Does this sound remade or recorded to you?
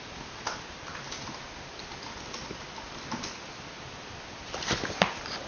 recorded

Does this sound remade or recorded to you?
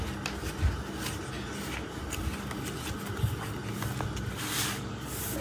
recorded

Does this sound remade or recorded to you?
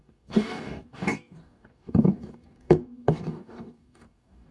remade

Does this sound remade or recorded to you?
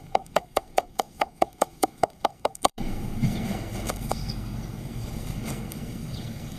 remade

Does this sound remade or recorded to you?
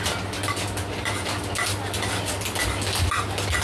recorded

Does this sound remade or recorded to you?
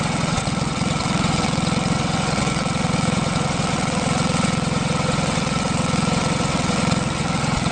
remade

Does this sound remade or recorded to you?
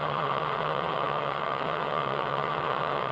remade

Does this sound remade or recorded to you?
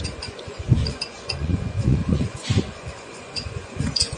remade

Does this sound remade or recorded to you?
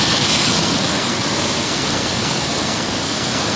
remade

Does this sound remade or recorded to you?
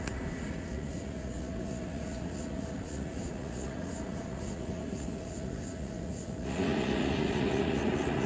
remade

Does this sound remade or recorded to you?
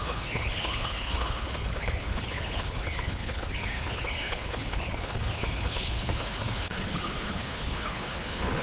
remade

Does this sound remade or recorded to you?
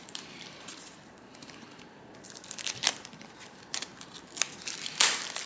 remade